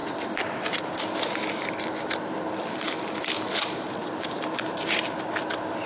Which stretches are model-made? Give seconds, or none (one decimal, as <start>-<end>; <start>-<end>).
4.0-5.0